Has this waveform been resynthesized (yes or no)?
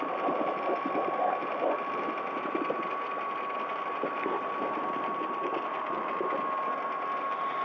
yes